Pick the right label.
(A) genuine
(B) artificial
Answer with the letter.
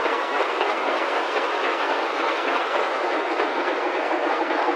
B